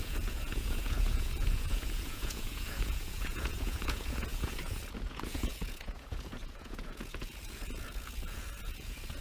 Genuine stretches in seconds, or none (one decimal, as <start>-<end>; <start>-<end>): none